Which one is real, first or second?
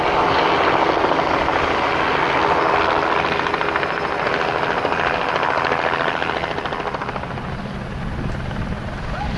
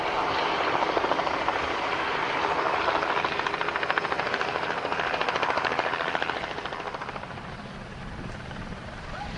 first